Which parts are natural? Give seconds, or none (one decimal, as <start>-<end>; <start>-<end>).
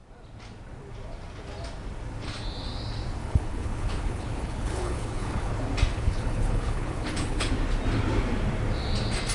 0.0-3.2; 5.5-5.9; 7.5-9.3